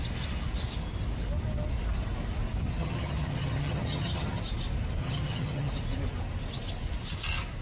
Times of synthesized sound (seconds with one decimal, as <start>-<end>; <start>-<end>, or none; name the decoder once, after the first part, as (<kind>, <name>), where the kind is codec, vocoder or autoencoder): 2.8-4.4 (vocoder, HiFi-GAN); 5.0-5.7